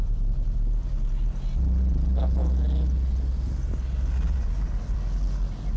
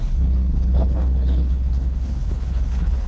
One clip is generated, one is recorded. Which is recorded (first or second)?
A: first